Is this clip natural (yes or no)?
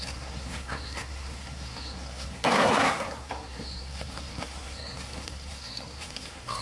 no